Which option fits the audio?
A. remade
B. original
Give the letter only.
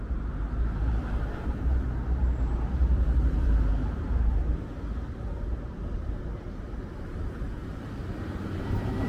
A